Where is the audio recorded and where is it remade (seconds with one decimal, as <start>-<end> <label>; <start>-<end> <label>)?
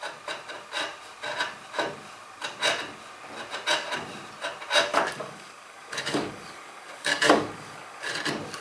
0.0-4.9 recorded; 4.9-8.1 remade; 8.1-8.6 recorded